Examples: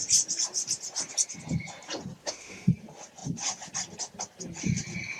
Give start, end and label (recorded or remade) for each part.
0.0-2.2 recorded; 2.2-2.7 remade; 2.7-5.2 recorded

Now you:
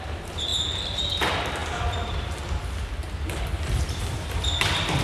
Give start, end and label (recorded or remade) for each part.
0.0-0.5 remade; 0.5-1.2 recorded; 1.2-1.6 remade; 1.6-3.3 recorded; 3.3-5.0 remade

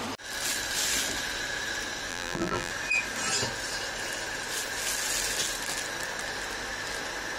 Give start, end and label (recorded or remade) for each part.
0.0-2.1 recorded; 2.1-2.7 remade; 2.7-7.4 recorded

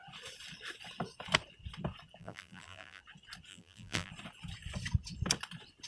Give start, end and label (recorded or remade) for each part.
0.0-2.2 recorded; 2.2-3.0 remade; 3.0-3.5 recorded; 3.5-4.1 remade; 4.1-5.9 recorded